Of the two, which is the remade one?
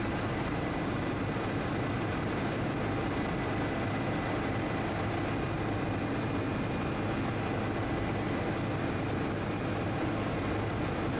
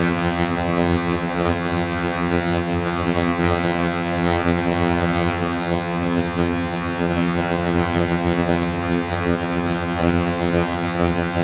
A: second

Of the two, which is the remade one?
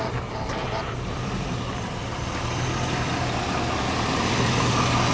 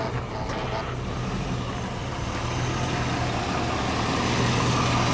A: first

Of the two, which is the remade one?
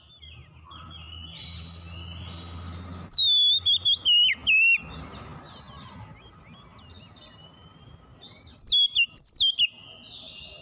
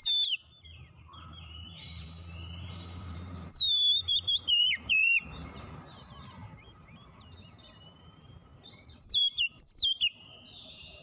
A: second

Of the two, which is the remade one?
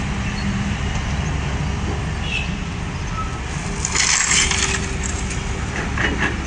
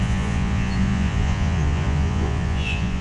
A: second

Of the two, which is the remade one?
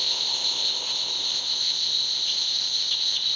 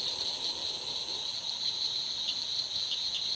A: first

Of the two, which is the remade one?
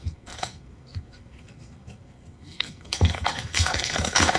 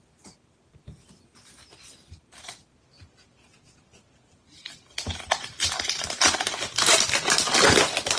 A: first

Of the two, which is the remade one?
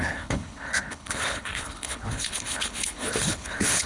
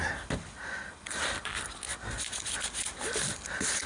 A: first